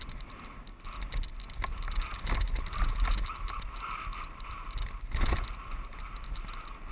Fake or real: real